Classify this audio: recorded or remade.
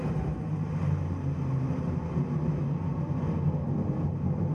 recorded